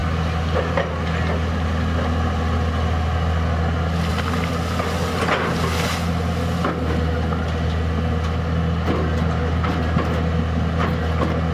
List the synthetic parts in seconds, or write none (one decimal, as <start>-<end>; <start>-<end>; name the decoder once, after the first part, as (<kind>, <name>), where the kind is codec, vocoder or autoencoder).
none